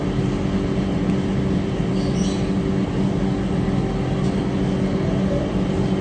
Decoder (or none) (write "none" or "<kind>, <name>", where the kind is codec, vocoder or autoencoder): none